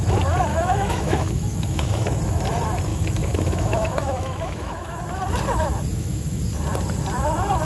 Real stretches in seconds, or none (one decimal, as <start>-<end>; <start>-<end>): 0.0-0.5; 2.2-2.9; 5.0-5.9; 6.4-7.6